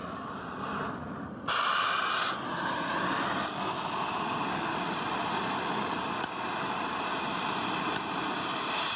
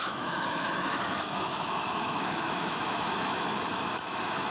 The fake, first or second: second